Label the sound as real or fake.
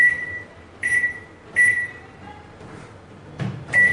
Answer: fake